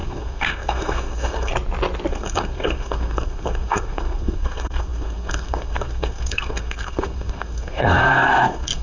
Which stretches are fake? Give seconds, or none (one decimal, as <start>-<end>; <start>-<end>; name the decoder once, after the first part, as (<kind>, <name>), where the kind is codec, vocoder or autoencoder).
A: 0.0-1.5 (codec, SNAC); 2.1-8.8